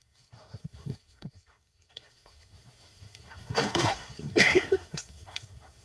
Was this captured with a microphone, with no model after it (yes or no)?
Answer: no